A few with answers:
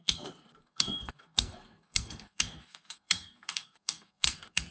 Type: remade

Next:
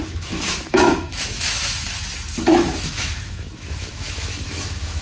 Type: remade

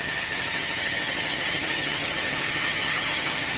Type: remade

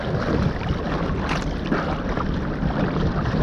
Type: recorded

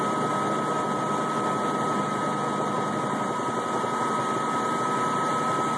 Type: recorded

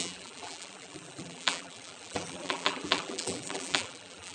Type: remade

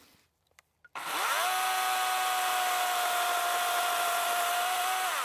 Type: remade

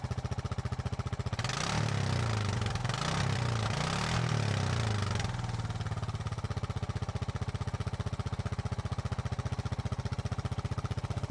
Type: recorded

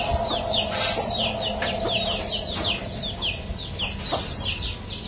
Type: recorded